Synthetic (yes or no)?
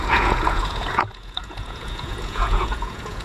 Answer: yes